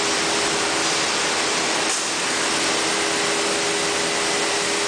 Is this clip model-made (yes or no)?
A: no